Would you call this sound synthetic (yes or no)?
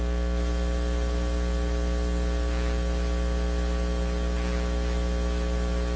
no